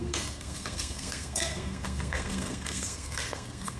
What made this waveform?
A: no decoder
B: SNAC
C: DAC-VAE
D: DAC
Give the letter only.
B